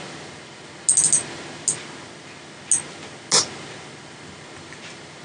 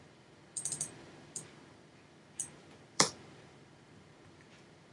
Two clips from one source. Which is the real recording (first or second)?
first